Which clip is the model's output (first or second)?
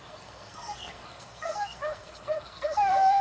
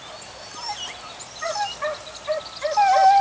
first